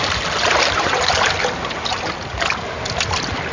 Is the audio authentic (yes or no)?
yes